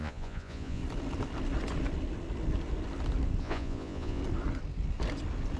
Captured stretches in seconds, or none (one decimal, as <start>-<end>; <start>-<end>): 0.8-3.4; 4.2-5.6